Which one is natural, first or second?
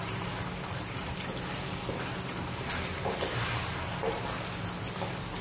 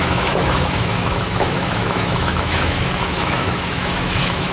first